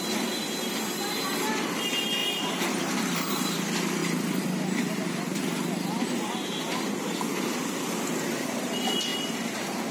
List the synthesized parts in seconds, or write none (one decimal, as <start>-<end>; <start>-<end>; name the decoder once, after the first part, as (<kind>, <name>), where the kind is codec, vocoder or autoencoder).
2.2-3.6 (vocoder, BigVGAN v2); 4.0-6.3